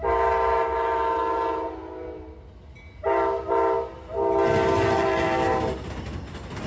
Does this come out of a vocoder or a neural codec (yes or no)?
no